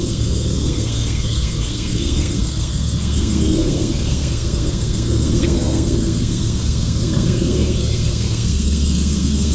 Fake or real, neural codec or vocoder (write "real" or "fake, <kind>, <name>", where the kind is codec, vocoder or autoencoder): fake, codec, SNAC